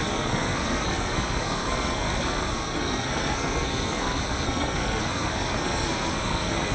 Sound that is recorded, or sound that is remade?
remade